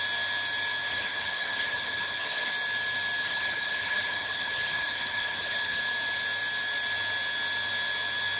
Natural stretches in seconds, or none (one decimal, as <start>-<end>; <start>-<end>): 0.0-0.9; 2.5-3.2; 5.8-8.4